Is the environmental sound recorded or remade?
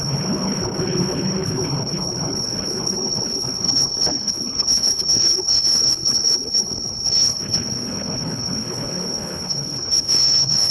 remade